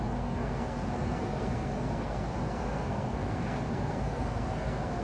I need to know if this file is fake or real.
fake